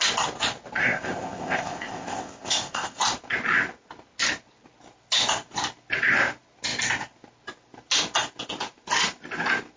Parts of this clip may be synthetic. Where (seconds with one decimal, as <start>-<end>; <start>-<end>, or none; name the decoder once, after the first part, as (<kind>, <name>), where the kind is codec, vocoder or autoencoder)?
0.8-3.0 (codec, ZipCodec)